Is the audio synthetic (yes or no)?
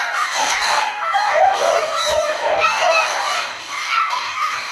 yes